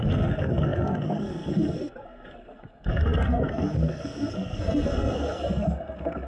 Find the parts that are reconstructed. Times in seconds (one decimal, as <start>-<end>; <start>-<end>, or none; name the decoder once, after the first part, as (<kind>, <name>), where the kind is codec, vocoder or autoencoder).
0.0-6.3 (codec, SNAC)